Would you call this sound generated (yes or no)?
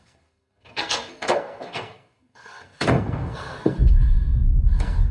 yes